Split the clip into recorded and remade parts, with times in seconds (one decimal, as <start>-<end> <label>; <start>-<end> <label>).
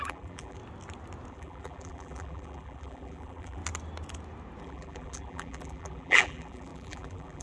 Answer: 0.0-0.6 remade; 0.6-1.3 recorded; 1.3-3.6 remade; 3.6-4.6 recorded; 4.6-7.4 remade